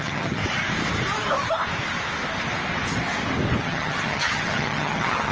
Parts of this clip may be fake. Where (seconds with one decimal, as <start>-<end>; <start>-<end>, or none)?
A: 0.0-0.4; 3.6-5.3